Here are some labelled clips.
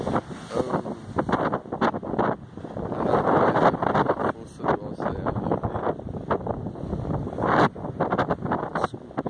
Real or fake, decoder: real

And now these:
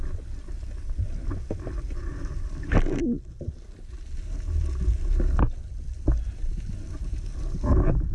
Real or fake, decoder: real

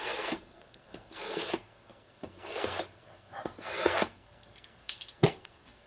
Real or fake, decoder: fake, codec, SNAC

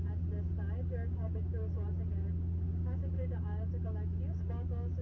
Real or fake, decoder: real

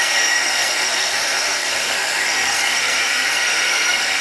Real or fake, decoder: fake, codec, SNAC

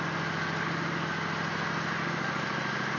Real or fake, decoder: real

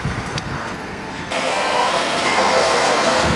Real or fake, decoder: fake, codec, SNAC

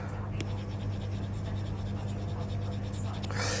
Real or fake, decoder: real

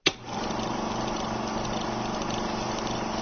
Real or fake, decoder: real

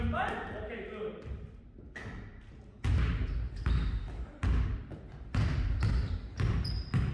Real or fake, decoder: real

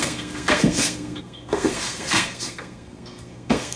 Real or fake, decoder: fake, codec, SNAC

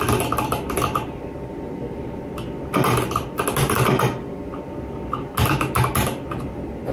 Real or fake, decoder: real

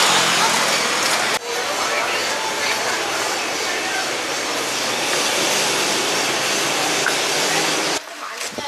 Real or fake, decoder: real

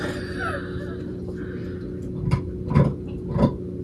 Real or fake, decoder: real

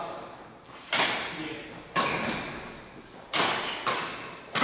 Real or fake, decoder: real